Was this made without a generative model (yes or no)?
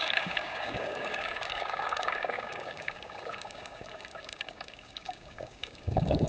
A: no